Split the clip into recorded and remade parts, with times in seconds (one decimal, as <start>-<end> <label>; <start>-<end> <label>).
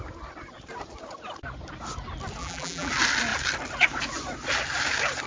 0.0-2.4 recorded; 2.4-2.9 remade; 2.9-5.3 recorded